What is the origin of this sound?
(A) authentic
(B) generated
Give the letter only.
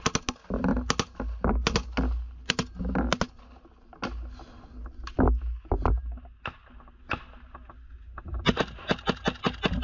A